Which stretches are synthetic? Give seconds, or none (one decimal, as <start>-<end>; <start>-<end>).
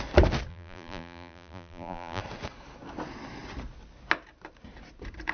0.5-2.2